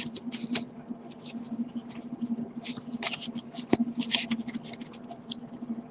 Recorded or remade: recorded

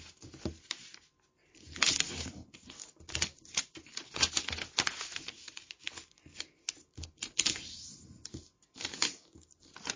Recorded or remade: recorded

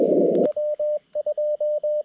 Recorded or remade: recorded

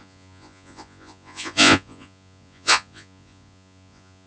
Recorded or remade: remade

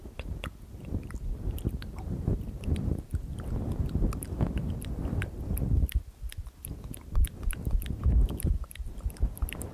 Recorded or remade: recorded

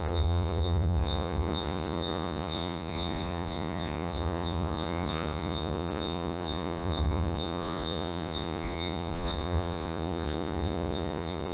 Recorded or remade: remade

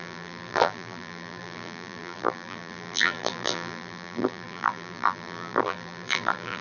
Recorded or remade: remade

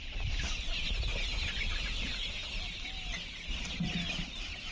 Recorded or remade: recorded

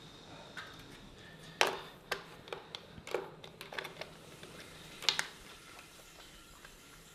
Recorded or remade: recorded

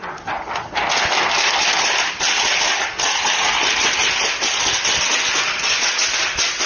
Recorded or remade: recorded